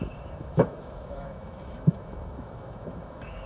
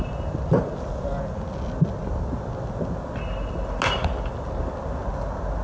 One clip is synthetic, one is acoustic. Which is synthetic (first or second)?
first